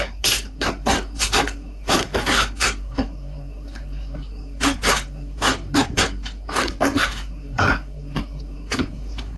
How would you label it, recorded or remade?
remade